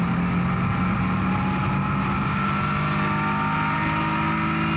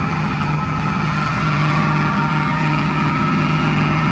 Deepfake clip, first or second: second